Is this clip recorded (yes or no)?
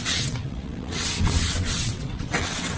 no